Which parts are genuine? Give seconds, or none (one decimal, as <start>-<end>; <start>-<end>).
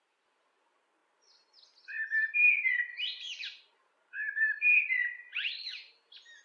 0.0-6.4